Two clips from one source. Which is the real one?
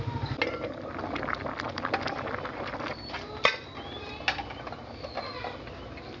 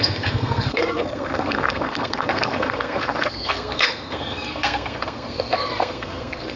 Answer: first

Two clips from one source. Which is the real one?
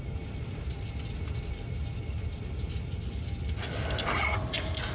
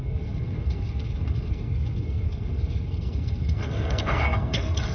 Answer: first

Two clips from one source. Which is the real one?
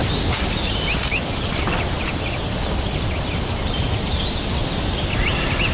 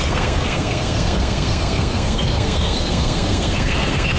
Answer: first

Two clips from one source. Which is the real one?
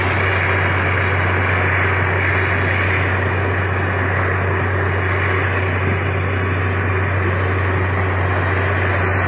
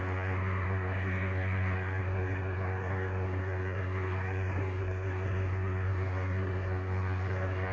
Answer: first